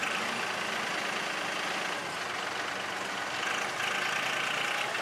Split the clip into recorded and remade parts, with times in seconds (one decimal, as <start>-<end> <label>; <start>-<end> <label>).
0.0-5.0 recorded